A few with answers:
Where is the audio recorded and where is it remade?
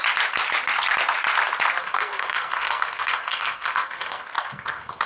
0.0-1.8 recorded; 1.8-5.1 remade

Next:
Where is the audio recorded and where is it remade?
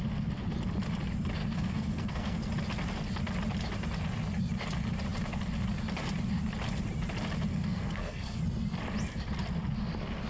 0.0-1.4 recorded; 1.4-2.5 remade; 2.5-7.5 recorded; 7.5-8.4 remade; 8.4-10.3 recorded